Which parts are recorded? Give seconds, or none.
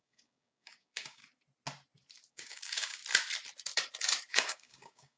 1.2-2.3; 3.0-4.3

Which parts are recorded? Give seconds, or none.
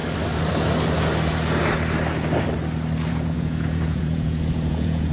0.0-3.1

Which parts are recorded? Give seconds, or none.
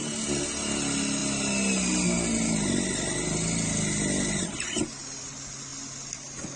0.0-6.6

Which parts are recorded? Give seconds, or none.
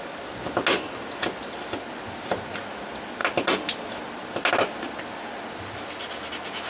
0.0-6.7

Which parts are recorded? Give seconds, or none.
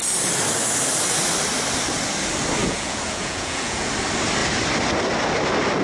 0.0-2.6; 3.9-5.8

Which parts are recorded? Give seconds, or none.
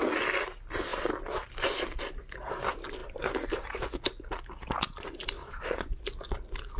0.0-5.4; 6.0-6.8